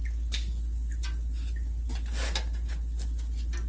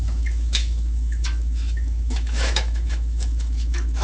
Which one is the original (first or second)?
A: first